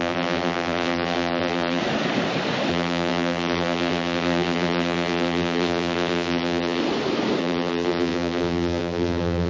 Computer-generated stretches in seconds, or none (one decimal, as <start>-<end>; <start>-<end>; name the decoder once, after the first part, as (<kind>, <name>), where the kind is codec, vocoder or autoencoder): 0.0-1.8 (vocoder, BigVGAN v2); 2.7-6.8; 7.4-9.5